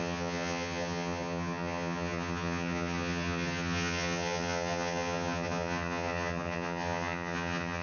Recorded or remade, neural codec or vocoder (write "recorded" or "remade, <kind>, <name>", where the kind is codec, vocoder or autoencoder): remade, vocoder, HiFi-GAN